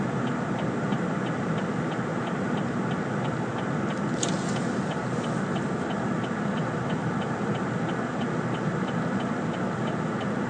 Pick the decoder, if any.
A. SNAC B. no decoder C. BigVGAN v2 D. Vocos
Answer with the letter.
B